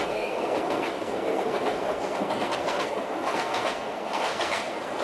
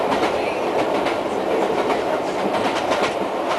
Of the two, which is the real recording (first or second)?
second